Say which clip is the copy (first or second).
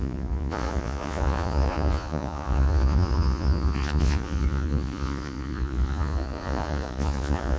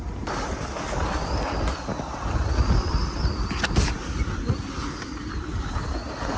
first